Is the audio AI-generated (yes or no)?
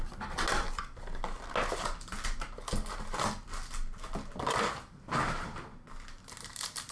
no